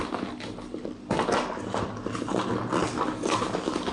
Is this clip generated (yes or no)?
no